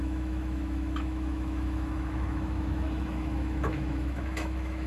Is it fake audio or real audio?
fake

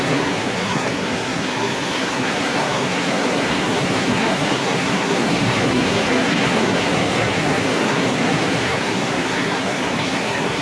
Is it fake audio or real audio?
fake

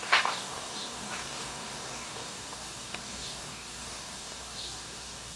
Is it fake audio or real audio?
fake